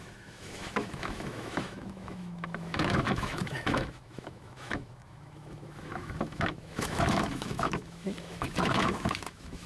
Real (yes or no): no